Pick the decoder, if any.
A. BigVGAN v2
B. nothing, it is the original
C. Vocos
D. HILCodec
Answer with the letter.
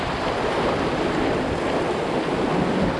B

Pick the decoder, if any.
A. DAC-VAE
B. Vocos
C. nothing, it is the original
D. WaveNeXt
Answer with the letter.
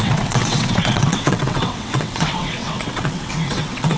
D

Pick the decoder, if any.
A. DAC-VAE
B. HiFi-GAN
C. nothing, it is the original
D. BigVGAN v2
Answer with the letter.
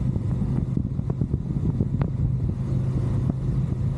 C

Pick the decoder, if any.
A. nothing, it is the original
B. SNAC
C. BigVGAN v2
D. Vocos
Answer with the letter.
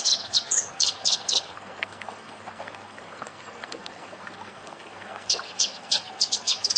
B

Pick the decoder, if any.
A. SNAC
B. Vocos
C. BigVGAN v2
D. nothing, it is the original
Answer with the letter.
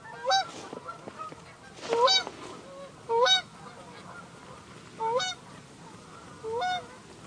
D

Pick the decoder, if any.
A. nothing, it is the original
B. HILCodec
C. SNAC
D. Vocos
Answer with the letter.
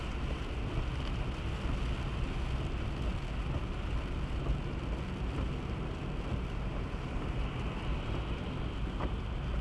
A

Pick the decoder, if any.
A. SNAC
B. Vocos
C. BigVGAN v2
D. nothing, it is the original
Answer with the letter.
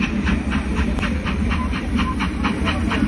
C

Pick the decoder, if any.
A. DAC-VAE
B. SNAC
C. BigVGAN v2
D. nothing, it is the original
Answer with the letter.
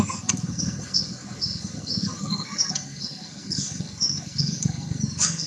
B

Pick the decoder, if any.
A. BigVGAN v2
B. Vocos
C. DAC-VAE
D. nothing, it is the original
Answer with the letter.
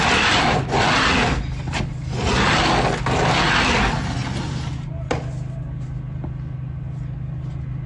D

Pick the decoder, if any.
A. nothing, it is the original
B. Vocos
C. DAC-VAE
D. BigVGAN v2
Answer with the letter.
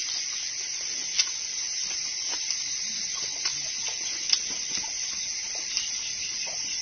A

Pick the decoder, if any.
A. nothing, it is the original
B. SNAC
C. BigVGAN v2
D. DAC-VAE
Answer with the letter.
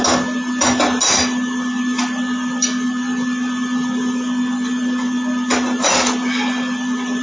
A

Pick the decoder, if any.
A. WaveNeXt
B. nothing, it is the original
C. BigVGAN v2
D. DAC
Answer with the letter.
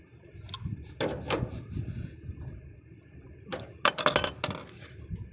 B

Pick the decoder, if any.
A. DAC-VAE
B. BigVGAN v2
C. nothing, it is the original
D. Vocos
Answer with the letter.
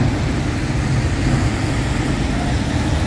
C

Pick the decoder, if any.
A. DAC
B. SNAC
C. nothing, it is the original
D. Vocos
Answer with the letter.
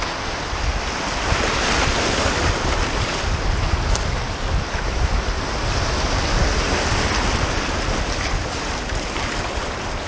C